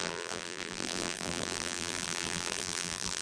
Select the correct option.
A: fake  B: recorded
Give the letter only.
A